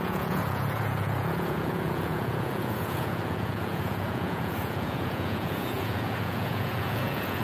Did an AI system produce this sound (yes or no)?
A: yes